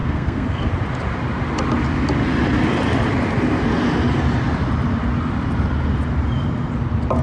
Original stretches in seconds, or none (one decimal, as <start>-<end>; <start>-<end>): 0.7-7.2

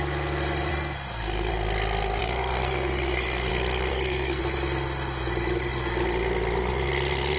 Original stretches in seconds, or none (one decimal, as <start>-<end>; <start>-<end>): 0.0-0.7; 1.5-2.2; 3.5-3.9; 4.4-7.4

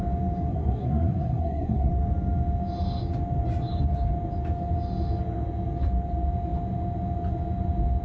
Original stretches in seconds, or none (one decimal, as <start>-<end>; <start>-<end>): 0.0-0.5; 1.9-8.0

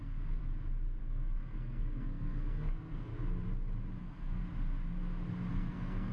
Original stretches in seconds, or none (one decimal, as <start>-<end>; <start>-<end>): 0.4-1.0; 3.1-4.0; 4.4-5.5